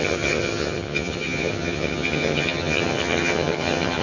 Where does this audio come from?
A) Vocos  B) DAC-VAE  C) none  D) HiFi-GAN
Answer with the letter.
D